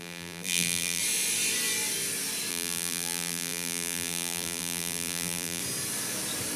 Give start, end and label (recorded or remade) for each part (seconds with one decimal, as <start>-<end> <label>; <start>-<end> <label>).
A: 0.0-1.0 remade; 1.0-2.5 recorded; 2.5-5.6 remade; 5.6-6.6 recorded